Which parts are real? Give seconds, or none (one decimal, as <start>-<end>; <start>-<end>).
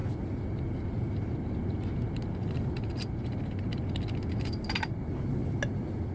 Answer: 0.0-6.1